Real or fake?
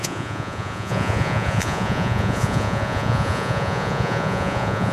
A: fake